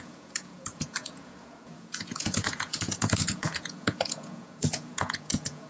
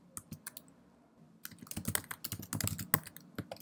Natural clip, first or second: second